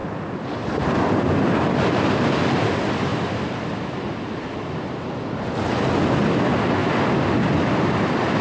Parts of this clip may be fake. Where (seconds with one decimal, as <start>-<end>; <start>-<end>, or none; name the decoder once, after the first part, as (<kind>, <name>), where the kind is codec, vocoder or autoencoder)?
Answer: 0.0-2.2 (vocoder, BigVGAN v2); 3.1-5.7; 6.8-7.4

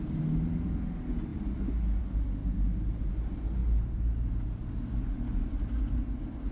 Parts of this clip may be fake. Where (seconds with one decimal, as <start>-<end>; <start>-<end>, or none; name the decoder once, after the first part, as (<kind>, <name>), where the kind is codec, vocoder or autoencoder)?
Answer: 2.4-3.1 (vocoder, BigVGAN v2); 3.6-4.7

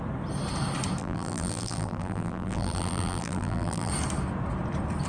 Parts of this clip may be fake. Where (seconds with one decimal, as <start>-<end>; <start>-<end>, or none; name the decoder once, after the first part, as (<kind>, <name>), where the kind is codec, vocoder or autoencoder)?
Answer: 1.0-3.9 (vocoder, BigVGAN v2)